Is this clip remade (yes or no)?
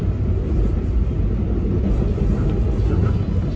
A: no